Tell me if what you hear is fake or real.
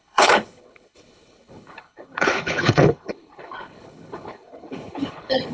fake